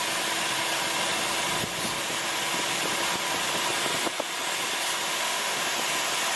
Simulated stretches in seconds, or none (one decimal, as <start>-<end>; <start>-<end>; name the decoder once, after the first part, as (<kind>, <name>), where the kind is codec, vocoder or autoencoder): 5.1-5.6 (autoencoder, DAC-VAE)